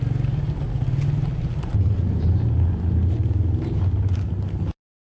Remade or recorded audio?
recorded